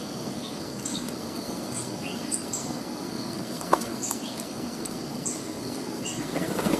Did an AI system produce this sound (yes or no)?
yes